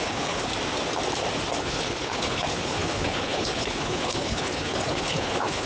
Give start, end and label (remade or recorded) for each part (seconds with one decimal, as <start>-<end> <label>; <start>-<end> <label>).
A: 0.0-0.5 remade; 0.5-1.6 recorded; 1.6-5.7 remade